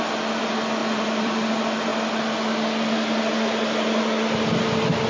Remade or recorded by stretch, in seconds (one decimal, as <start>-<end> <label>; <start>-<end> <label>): 0.0-0.8 recorded; 0.8-1.5 remade; 1.5-5.1 recorded